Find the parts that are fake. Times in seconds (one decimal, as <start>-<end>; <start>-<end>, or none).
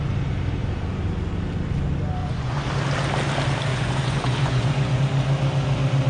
2.2-2.7; 3.7-5.0